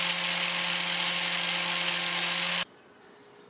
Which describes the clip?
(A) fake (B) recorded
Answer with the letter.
B